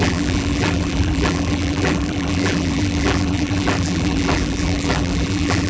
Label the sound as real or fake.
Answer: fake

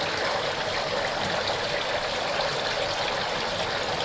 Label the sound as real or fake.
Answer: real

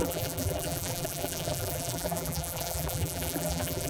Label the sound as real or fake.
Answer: fake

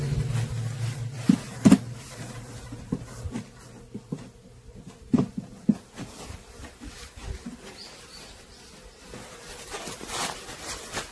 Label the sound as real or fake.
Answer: real